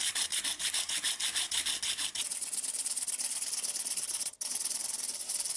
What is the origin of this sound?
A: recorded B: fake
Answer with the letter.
B